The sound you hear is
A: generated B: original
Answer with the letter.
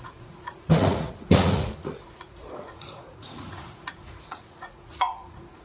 A